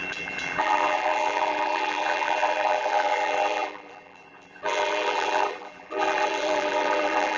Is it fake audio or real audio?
fake